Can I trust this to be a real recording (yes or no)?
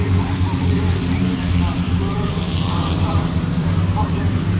no